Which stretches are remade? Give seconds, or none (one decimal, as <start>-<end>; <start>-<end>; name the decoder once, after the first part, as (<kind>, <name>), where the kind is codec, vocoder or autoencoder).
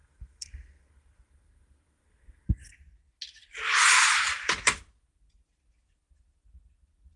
0.0-2.5 (codec, SNAC)